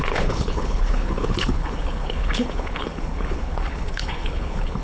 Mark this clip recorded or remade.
remade